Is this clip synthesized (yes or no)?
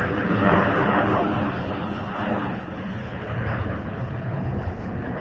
yes